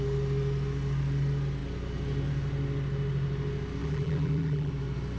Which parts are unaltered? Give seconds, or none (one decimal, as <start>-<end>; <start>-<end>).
0.0-3.8; 4.7-5.2